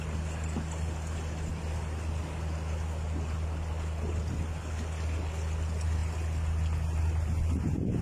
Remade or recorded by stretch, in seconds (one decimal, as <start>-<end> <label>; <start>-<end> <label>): 0.0-8.0 recorded